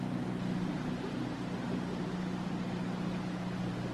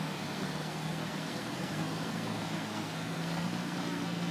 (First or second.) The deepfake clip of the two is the second